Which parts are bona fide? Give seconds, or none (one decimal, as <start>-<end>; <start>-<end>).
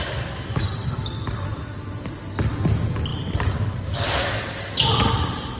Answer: 0.0-1.5; 2.2-5.6